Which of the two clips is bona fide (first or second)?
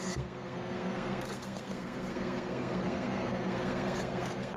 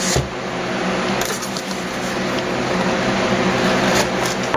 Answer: second